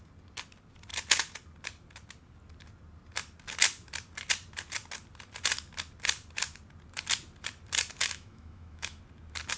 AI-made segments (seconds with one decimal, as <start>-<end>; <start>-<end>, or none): 8.0-9.0